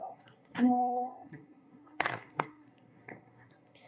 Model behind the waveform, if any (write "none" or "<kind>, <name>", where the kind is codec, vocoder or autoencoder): codec, SNAC